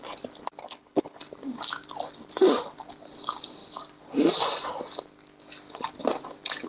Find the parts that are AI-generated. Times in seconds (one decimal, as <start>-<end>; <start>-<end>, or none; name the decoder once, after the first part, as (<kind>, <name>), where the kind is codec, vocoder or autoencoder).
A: 0.6-1.2 (codec, HILCodec)